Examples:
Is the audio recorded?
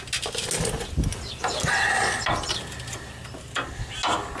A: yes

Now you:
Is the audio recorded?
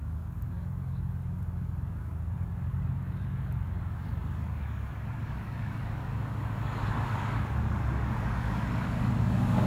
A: no